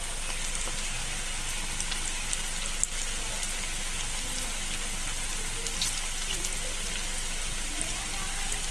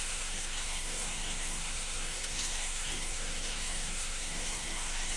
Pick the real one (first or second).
first